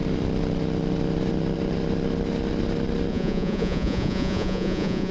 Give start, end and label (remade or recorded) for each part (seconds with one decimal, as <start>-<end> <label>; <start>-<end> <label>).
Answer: 0.0-3.1 recorded; 3.1-5.1 remade